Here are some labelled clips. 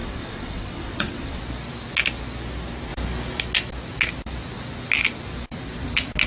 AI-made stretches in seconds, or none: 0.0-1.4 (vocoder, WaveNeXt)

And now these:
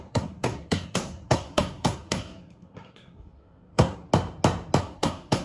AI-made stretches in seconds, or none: 0.0-4.1 (codec, SNAC); 4.8-5.4

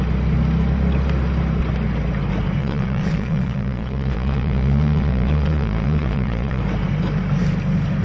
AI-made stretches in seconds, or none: 2.6-6.6 (vocoder, Vocos)

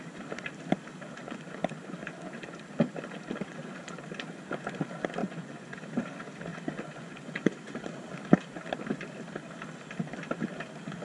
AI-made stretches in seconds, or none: 1.2-2.3 (vocoder, Vocos); 5.2-5.8; 6.5-7.8